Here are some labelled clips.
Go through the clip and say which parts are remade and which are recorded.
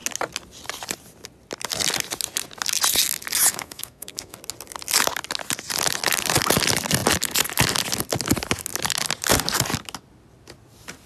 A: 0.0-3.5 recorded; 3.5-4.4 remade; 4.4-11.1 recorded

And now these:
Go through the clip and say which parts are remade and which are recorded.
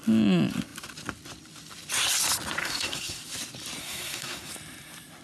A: 0.0-2.6 recorded; 2.6-3.2 remade; 3.2-3.8 recorded; 3.8-4.5 remade; 4.5-5.2 recorded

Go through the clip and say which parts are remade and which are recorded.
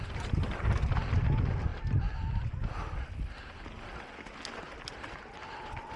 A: 0.0-6.0 recorded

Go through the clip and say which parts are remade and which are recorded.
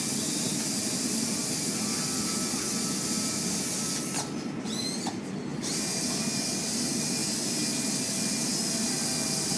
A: 0.0-9.6 recorded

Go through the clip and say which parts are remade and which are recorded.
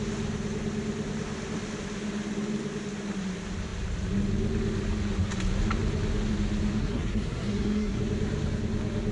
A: 0.0-6.8 recorded; 6.8-8.0 remade; 8.0-9.1 recorded